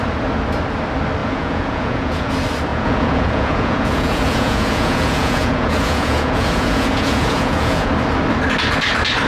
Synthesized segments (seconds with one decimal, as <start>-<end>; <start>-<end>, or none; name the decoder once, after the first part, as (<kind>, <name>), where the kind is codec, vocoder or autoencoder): 1.2-2.3 (vocoder, Vocos); 2.7-7.9